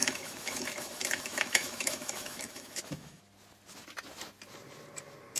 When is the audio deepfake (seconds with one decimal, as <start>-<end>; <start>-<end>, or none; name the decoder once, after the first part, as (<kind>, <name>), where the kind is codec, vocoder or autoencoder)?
0.0-3.2 (autoencoder, DAC-VAE)